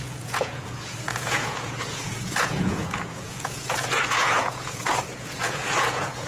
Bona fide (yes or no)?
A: no